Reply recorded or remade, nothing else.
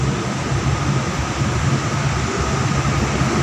recorded